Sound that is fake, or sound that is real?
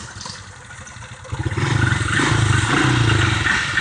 real